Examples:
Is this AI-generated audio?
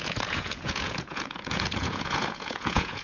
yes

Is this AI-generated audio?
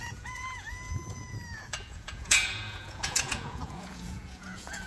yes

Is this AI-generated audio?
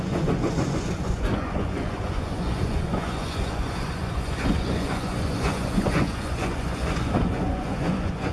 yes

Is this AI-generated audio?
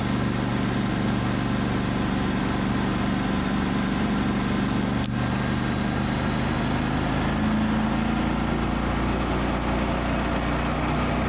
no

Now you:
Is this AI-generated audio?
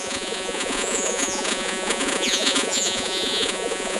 yes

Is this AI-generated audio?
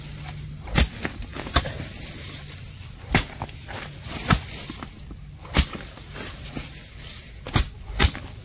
no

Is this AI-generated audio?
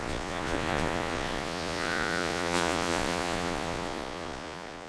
yes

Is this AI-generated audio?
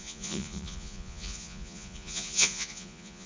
yes